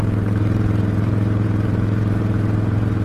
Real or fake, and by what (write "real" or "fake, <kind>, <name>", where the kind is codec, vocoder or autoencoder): fake, vocoder, BigVGAN v2